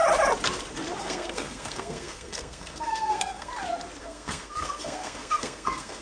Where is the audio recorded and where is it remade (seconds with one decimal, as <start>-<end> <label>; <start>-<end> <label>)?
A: 0.0-1.0 recorded; 1.0-3.5 remade; 3.5-4.0 recorded; 4.0-6.0 remade

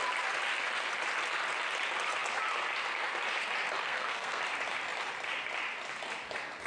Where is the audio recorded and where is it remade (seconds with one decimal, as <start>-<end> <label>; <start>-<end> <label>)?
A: 0.0-3.8 recorded; 3.8-4.4 remade; 4.4-6.7 recorded

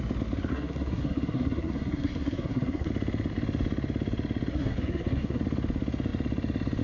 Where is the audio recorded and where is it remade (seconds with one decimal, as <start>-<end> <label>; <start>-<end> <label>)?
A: 0.0-0.5 recorded; 0.5-2.9 remade; 2.9-4.5 recorded; 4.5-5.4 remade; 5.4-6.8 recorded

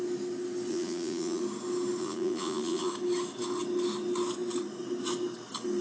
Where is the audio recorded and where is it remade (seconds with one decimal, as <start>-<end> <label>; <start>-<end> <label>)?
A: 0.0-0.7 recorded; 0.7-1.4 remade; 1.4-2.0 recorded; 2.0-2.9 remade; 2.9-5.8 recorded

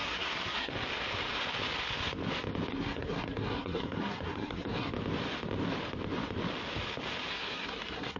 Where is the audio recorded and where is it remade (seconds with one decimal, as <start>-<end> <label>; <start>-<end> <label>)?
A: 0.0-0.7 remade; 0.7-2.7 recorded; 2.7-4.9 remade; 4.9-7.3 recorded; 7.3-8.2 remade